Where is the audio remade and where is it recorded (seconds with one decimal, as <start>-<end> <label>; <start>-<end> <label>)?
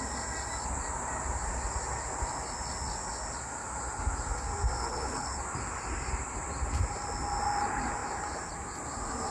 0.0-4.8 recorded; 4.8-5.4 remade; 5.4-9.3 recorded